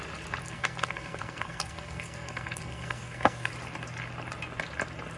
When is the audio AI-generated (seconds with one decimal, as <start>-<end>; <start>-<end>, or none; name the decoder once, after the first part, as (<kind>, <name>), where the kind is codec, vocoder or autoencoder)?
0.4-3.5 (codec, SNAC)